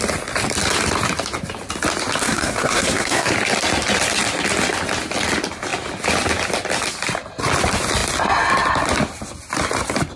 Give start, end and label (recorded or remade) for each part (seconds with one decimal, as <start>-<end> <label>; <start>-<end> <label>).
0.0-2.2 recorded; 2.2-3.3 remade; 3.3-10.2 recorded

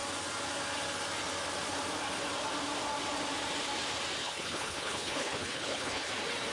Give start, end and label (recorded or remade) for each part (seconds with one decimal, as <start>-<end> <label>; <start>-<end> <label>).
0.0-4.2 recorded; 4.2-6.1 remade; 6.1-6.5 recorded

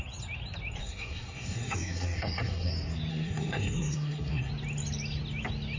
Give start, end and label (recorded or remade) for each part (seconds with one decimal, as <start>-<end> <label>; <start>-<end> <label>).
0.0-0.8 recorded; 0.8-2.7 remade; 2.7-3.1 recorded; 3.1-4.5 remade; 4.5-5.8 recorded

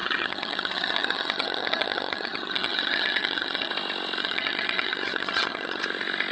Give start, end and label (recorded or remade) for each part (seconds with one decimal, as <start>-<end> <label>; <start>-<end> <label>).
0.0-3.7 remade; 3.7-4.2 recorded; 4.2-5.8 remade; 5.8-6.3 recorded

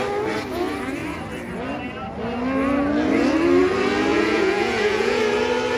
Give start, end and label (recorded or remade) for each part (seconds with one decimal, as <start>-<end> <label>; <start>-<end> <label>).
0.0-4.1 recorded; 4.1-5.2 remade; 5.2-5.8 recorded

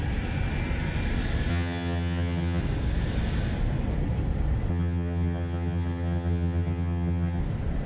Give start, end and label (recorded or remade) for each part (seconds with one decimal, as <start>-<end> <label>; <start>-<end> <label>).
0.0-1.5 recorded; 1.5-2.6 remade; 2.6-4.7 recorded; 4.7-7.4 remade; 7.4-7.9 recorded

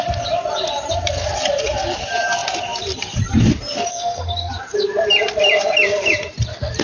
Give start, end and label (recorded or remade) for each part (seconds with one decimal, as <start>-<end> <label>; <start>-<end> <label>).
0.0-3.9 recorded; 3.9-4.5 remade; 4.5-6.8 recorded